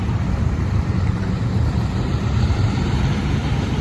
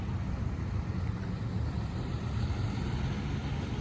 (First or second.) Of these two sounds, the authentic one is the second